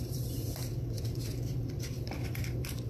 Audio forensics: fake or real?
fake